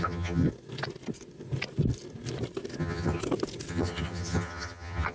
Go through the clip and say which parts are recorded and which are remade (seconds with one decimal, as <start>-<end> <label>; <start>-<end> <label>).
0.0-0.5 remade; 0.5-2.8 recorded; 2.8-3.2 remade; 3.2-3.7 recorded; 3.7-5.1 remade